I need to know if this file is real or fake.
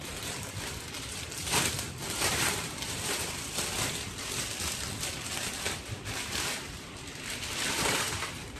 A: fake